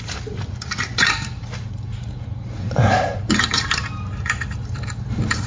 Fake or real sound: fake